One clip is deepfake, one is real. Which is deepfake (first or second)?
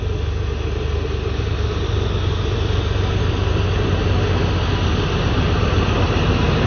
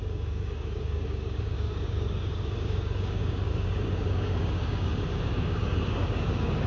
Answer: second